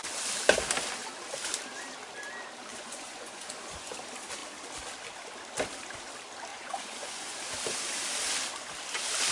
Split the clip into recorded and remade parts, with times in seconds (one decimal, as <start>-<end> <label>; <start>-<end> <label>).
0.0-2.7 recorded; 2.7-3.9 remade; 3.9-6.5 recorded; 6.5-7.4 remade; 7.4-9.3 recorded